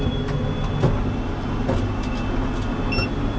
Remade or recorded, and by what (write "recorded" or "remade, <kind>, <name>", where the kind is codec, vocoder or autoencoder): recorded